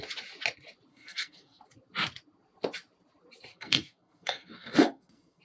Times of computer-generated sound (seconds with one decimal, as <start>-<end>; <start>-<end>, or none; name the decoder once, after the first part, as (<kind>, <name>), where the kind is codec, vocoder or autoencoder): 0.9-1.6 (codec, SNAC); 3.5-5.4